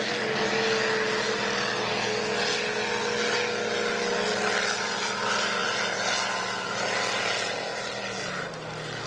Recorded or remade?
recorded